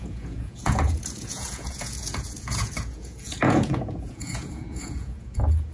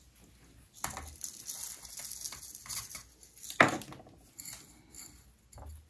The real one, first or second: second